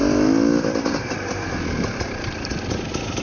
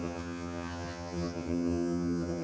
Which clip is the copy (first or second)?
second